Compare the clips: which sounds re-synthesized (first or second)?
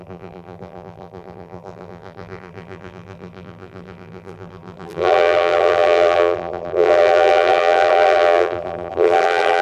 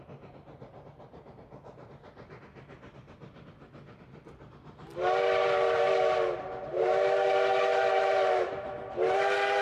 first